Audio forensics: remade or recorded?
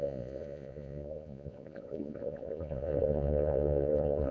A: remade